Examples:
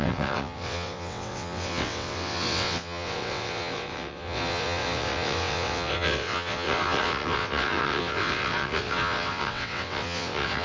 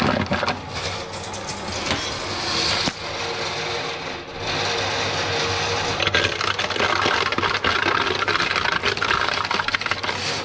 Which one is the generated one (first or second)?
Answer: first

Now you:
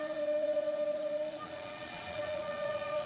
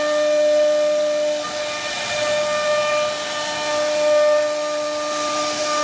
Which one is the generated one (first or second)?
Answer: first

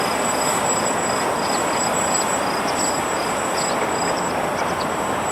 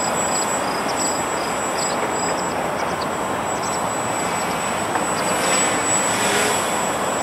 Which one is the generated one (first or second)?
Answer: first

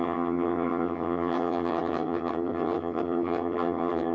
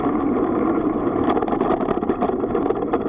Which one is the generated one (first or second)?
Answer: first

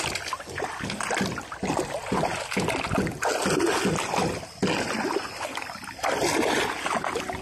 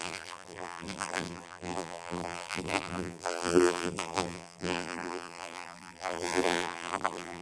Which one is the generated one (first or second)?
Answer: second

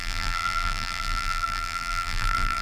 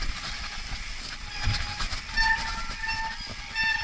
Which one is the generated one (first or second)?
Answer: first